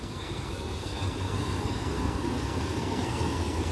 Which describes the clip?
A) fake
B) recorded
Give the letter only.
A